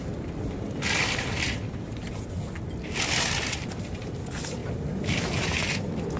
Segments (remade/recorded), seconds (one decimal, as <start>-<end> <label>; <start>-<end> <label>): 0.0-6.2 recorded